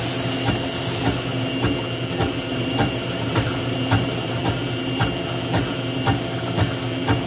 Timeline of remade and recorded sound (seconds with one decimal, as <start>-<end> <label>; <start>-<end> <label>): 0.0-2.5 recorded; 2.5-4.4 remade; 4.4-7.3 recorded